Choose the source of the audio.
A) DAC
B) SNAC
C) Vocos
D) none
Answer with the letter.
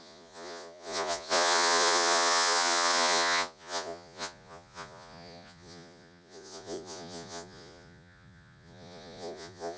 C